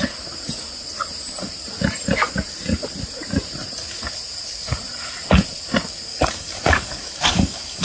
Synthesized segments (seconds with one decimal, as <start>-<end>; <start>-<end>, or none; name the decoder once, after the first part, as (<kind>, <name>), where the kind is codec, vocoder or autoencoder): 6.1-7.8 (codec, DAC)